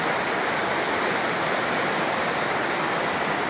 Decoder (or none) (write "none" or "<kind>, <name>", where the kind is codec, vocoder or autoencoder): none